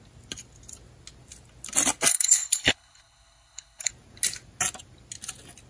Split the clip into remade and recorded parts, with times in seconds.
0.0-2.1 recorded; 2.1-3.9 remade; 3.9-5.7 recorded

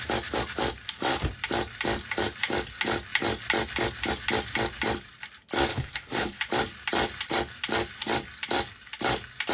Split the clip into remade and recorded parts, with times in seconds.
0.0-5.7 recorded; 5.7-6.4 remade; 6.4-9.5 recorded

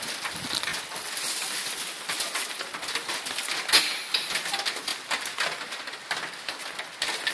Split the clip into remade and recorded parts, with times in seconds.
0.0-7.3 recorded

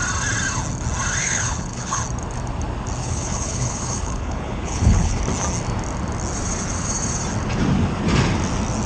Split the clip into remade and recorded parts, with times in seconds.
0.0-1.2 recorded; 1.2-2.0 remade; 2.0-3.0 recorded; 3.0-5.2 remade; 5.2-8.9 recorded

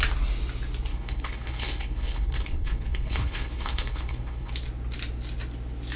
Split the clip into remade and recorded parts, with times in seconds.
0.0-0.9 recorded; 0.9-4.5 remade; 4.5-6.0 recorded

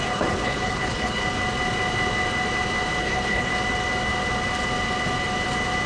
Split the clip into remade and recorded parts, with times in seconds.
0.0-1.2 remade; 1.2-3.0 recorded; 3.0-3.5 remade; 3.5-5.9 recorded

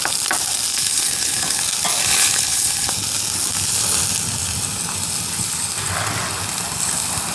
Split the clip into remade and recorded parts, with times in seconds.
0.0-0.7 recorded; 0.7-1.6 remade; 1.6-2.0 recorded; 2.0-2.9 remade; 2.9-7.3 recorded